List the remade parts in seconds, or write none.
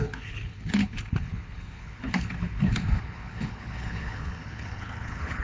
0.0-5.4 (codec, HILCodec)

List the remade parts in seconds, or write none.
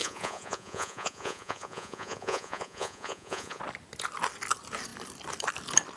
0.0-3.6 (vocoder, Vocos)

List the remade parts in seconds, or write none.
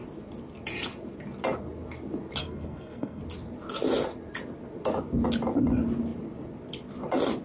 2.4-3.2 (codec, SNAC)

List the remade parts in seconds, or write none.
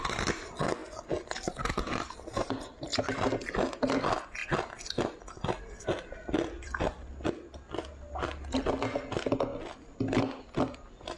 none